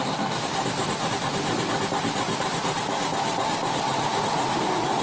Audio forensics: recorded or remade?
recorded